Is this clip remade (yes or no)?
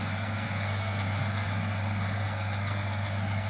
yes